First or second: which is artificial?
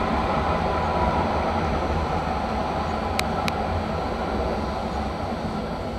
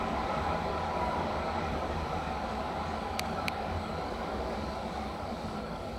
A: second